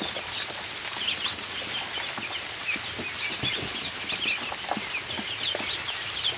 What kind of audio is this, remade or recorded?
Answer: recorded